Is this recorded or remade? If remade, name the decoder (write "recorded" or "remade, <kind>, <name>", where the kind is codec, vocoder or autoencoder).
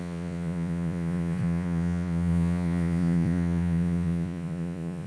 remade, vocoder, Vocos